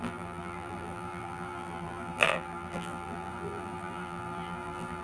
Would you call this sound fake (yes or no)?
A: yes